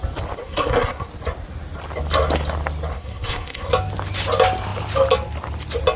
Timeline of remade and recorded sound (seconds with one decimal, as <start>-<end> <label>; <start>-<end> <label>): 0.0-0.4 recorded; 0.4-1.1 remade; 1.1-2.9 recorded; 2.9-3.7 remade; 3.7-6.0 recorded